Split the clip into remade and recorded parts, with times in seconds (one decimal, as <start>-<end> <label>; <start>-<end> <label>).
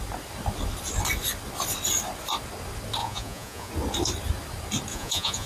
0.0-3.0 recorded; 3.0-3.7 remade; 3.7-4.9 recorded; 4.9-5.5 remade